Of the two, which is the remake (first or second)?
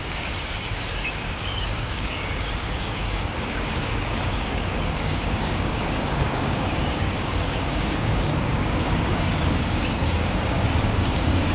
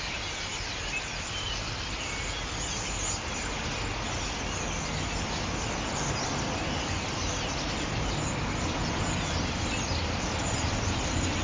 first